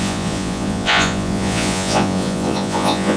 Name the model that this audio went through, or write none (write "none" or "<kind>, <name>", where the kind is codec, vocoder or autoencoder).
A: vocoder, Vocos